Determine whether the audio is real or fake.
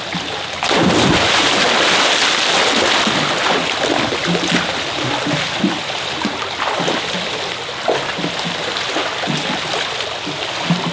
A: real